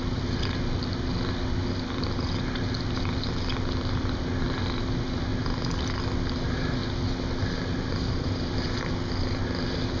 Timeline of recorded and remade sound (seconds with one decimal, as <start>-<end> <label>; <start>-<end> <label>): 0.0-10.0 recorded